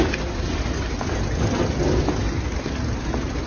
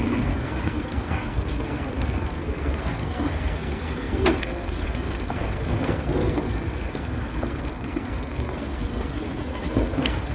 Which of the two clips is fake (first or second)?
second